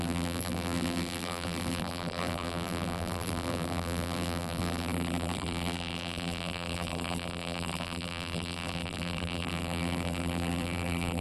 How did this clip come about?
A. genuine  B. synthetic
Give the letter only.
B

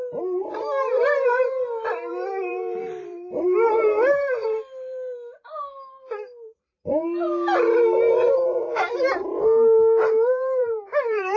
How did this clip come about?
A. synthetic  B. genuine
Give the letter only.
A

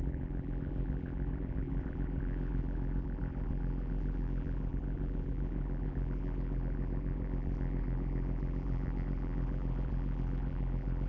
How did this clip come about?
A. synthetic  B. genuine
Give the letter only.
A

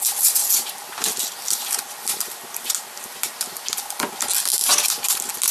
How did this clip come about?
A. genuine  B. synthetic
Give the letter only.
A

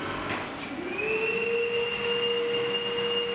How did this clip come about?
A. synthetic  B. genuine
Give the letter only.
B